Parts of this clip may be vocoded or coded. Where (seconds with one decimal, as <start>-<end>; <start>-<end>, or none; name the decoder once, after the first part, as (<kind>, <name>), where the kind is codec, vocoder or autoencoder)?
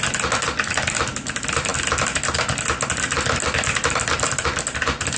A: none